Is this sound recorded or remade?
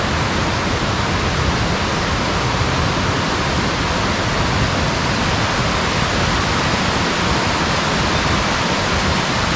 recorded